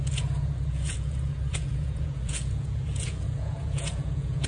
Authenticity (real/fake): fake